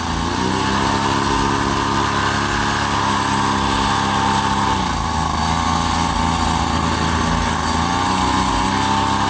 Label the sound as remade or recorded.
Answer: recorded